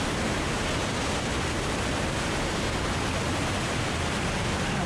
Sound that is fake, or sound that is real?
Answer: real